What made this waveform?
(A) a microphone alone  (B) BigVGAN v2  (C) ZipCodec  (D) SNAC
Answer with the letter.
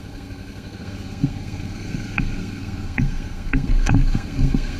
D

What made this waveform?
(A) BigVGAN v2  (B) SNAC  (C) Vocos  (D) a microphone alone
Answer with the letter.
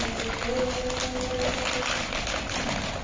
D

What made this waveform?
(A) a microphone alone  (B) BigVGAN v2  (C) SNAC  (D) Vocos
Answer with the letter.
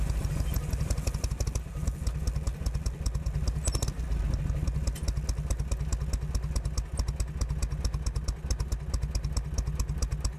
A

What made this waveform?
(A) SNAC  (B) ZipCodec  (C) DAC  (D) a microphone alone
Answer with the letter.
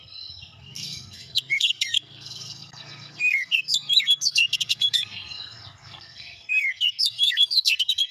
A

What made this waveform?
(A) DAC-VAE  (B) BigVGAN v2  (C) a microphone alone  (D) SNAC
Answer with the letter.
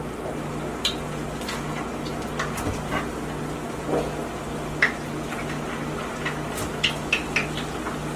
C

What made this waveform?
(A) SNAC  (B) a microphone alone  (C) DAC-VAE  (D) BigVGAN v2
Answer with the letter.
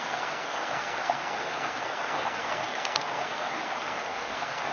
A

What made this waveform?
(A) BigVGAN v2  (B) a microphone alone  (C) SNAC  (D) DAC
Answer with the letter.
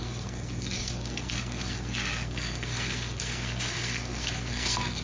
C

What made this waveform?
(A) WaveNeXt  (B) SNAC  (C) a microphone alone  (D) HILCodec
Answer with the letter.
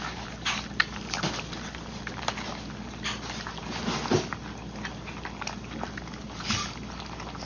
C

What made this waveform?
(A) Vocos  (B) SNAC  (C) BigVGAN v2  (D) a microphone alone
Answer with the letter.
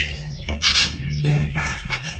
B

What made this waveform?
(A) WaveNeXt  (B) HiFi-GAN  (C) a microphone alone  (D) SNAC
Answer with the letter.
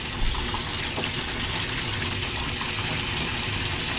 C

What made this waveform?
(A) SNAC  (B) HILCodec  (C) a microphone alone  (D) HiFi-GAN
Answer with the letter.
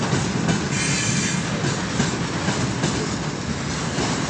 C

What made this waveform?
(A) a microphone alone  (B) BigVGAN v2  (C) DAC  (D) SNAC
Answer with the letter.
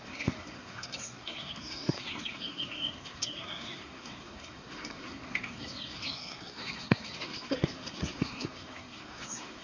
D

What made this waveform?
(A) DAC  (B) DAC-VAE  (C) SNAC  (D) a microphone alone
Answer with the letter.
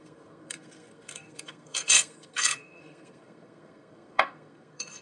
C